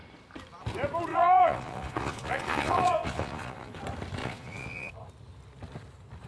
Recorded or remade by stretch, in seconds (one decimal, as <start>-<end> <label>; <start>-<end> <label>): 0.0-1.1 recorded; 1.1-3.8 remade; 3.8-4.2 recorded; 4.2-4.9 remade; 4.9-6.3 recorded